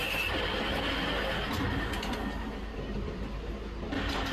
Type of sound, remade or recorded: recorded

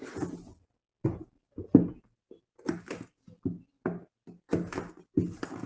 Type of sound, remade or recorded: recorded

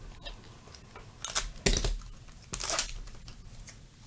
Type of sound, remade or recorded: recorded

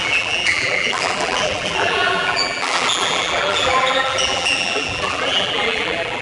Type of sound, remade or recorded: remade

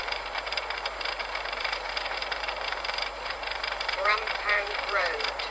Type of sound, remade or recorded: remade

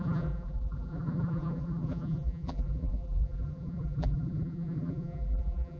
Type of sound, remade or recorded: remade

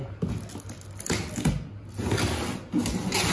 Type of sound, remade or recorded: recorded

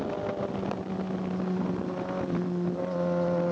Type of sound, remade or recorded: recorded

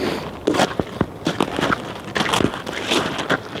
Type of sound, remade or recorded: recorded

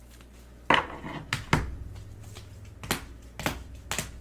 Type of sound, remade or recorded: recorded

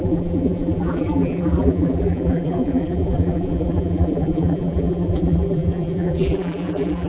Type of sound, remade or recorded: remade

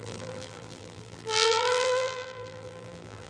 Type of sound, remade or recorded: remade